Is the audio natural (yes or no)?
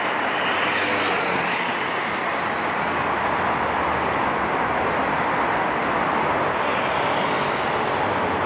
yes